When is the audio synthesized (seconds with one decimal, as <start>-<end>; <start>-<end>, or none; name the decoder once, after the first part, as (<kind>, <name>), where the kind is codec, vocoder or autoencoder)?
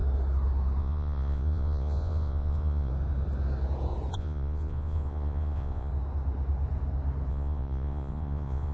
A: 0.8-2.9 (vocoder, Vocos); 4.1-5.9; 7.3-8.7